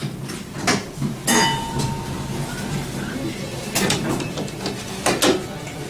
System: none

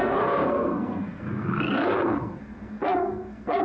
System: codec, SNAC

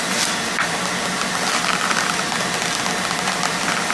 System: none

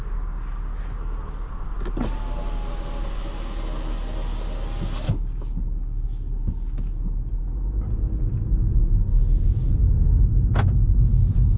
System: none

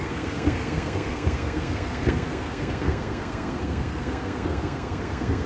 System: codec, SNAC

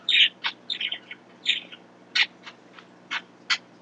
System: none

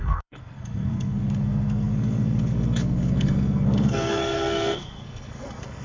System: codec, SNAC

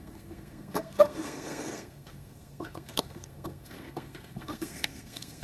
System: codec, SNAC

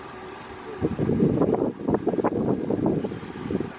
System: none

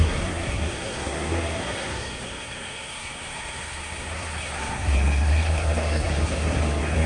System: codec, SNAC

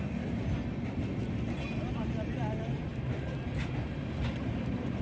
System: none